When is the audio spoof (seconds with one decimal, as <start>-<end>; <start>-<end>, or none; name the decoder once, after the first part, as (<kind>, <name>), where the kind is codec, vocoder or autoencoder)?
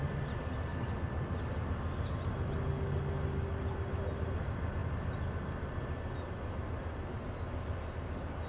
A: none